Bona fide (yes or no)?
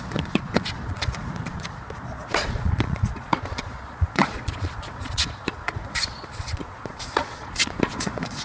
no